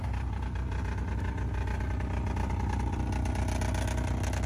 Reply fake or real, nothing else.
real